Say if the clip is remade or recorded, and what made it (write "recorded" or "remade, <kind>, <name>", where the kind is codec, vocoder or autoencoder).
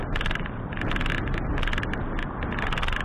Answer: recorded